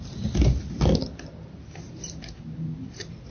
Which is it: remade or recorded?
recorded